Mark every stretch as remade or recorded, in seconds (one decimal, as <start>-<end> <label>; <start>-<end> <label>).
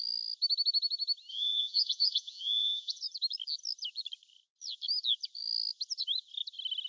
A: 0.0-1.3 recorded; 1.3-3.0 remade; 3.0-6.9 recorded